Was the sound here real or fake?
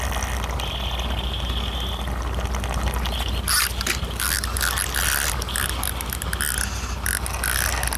real